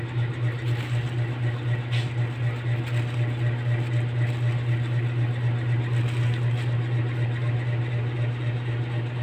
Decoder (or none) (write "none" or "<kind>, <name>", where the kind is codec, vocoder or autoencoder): none